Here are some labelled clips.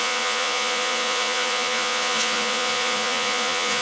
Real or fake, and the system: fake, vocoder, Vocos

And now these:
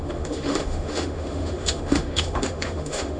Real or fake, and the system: fake, autoencoder, DAC-VAE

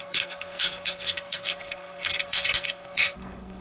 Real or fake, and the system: fake, codec, SNAC